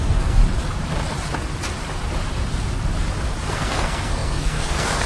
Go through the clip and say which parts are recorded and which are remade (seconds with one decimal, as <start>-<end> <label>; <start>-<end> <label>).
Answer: 0.0-0.4 remade; 0.4-3.5 recorded; 3.5-5.1 remade